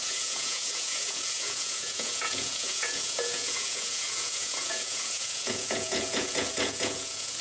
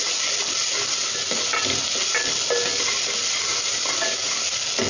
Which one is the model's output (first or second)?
first